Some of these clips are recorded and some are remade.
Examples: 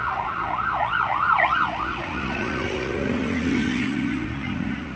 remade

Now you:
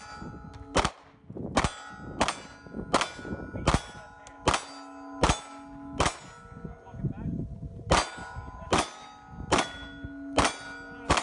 recorded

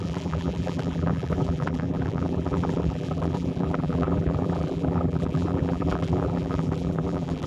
remade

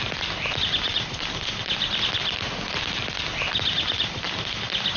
recorded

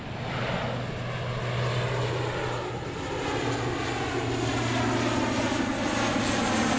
recorded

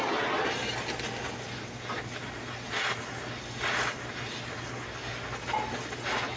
recorded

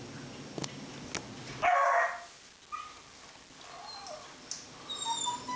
recorded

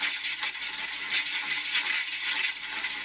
recorded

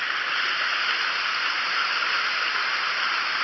recorded